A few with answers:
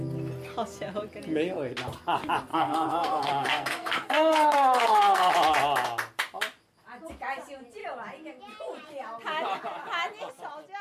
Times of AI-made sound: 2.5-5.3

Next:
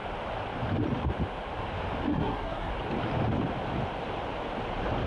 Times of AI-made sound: 2.1-2.7

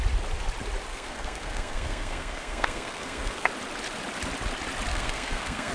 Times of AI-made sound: 0.9-3.5; 4.9-5.7